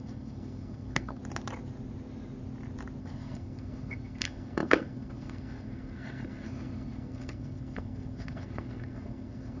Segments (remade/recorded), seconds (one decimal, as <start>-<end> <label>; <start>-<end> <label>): 0.0-1.2 remade; 1.2-3.0 recorded; 3.0-9.6 remade